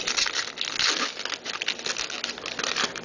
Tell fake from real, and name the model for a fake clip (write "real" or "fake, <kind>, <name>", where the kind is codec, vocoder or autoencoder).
real